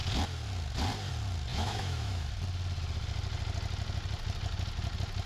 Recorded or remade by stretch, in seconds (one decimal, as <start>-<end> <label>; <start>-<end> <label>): 0.0-1.5 recorded; 1.5-2.3 remade; 2.3-5.3 recorded